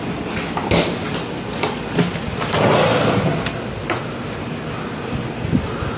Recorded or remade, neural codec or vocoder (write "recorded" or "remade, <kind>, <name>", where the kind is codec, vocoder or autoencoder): recorded